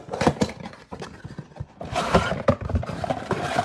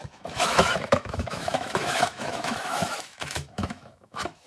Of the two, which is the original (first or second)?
first